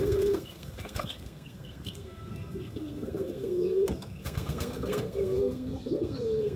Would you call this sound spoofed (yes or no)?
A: yes